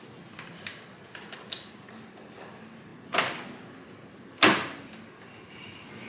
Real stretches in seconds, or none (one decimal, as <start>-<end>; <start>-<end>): 0.0-6.1